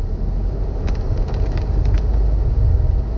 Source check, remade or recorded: recorded